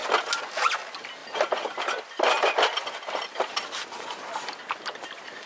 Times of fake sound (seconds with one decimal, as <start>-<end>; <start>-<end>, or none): 1.2-4.5